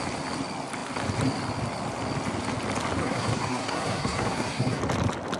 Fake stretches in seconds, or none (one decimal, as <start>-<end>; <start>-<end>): 3.0-4.8